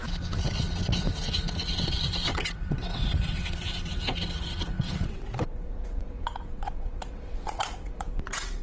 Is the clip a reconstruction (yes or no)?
yes